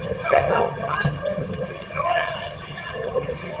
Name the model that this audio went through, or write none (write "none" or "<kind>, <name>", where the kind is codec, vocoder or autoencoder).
vocoder, HiFi-GAN